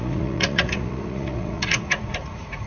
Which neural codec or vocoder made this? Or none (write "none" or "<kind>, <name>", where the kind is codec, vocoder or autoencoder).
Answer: vocoder, Vocos